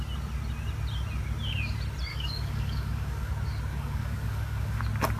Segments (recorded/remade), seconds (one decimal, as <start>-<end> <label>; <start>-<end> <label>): 0.0-2.1 recorded; 2.1-3.3 remade; 3.3-3.7 recorded; 3.7-4.8 remade; 4.8-5.2 recorded